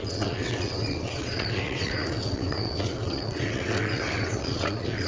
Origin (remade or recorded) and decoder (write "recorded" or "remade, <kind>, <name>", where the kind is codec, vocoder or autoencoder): remade, vocoder, WaveNeXt